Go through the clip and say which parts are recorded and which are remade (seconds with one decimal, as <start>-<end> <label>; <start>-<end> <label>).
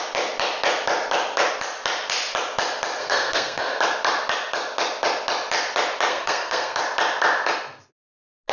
0.0-3.0 recorded; 3.0-3.8 remade; 3.8-6.1 recorded; 6.1-6.8 remade; 6.8-8.5 recorded